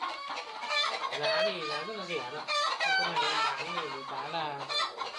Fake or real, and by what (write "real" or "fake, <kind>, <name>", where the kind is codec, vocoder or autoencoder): real